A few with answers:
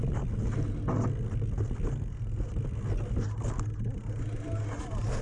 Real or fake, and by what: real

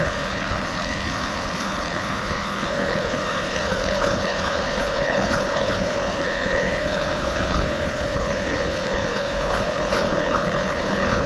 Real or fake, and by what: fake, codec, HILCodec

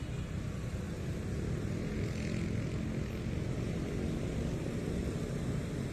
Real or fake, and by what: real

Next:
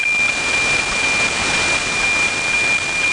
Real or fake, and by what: real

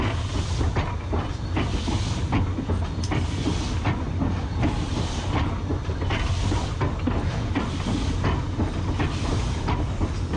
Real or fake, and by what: real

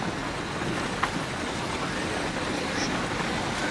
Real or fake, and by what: real